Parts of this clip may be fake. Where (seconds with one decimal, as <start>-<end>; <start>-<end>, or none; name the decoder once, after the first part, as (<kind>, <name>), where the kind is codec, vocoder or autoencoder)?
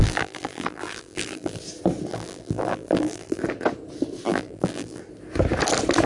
0.0-1.6 (vocoder, BigVGAN v2); 2.1-3.4; 4.3-5.0